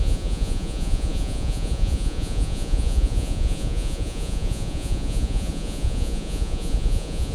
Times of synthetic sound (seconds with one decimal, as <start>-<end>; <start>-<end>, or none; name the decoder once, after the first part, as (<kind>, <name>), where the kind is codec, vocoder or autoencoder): 0.0-7.3 (vocoder, Vocos)